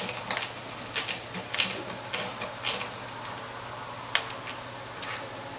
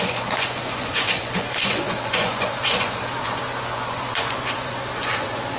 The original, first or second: first